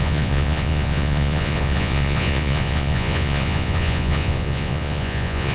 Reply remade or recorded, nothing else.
remade